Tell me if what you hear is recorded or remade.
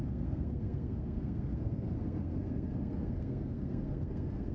remade